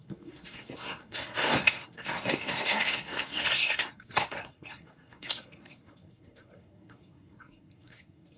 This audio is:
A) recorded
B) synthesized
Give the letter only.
B